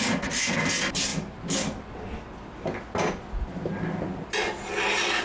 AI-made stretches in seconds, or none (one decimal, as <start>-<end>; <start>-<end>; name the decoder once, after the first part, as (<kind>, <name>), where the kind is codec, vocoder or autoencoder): none